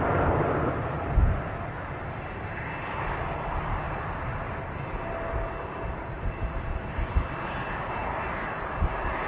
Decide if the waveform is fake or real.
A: real